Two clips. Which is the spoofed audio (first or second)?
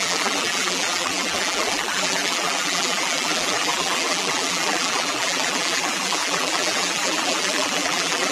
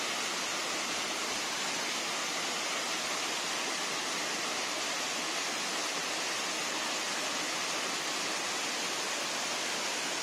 first